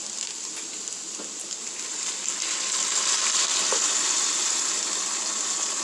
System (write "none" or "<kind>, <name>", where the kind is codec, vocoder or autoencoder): vocoder, BigVGAN v2